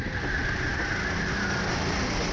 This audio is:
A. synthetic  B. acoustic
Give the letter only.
B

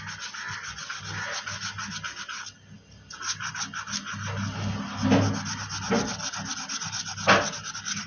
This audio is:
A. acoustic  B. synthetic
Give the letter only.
A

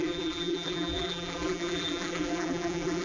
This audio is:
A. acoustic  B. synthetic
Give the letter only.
B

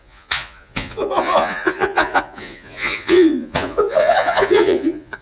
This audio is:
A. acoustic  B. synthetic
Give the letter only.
B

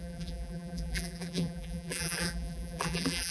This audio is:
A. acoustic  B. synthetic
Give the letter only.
B